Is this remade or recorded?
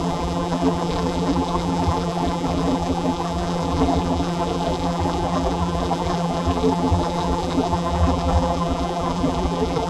remade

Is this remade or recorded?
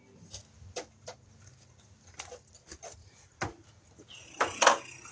recorded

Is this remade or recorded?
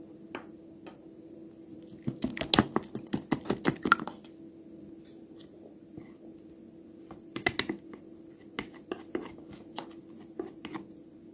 recorded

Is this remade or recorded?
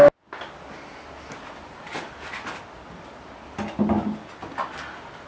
recorded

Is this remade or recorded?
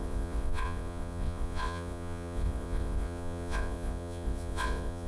remade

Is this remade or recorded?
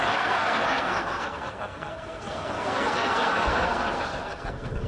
remade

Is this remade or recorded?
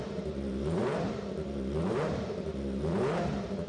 remade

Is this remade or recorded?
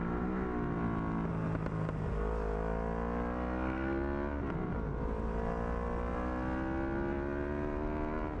recorded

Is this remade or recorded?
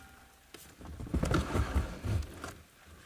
recorded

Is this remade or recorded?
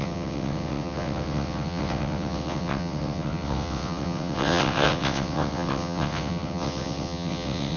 remade